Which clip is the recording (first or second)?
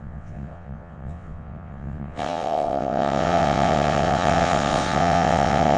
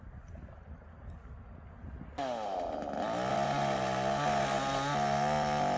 second